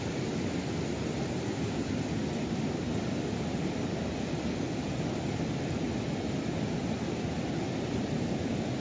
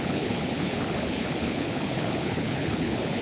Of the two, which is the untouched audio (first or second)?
first